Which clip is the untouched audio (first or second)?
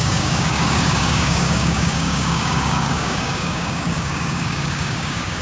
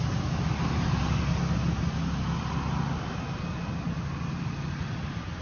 second